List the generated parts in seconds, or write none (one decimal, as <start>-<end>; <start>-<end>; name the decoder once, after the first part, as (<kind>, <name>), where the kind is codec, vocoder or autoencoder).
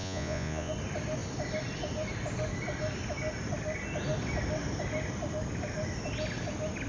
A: 0.0-0.7 (vocoder, Vocos)